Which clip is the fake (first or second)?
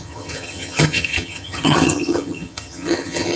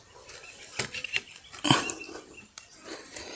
first